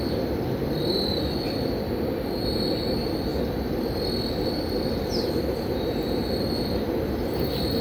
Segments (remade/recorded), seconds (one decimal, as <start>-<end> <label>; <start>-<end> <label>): 0.0-7.8 recorded